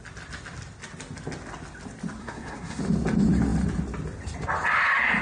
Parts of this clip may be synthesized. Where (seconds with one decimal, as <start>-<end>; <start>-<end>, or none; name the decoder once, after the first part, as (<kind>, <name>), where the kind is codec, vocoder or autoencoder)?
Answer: 2.2-2.8 (codec, SNAC)